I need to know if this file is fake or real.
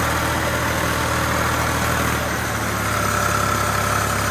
real